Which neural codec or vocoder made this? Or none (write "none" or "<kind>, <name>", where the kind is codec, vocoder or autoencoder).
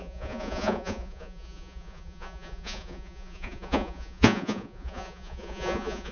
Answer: vocoder, Vocos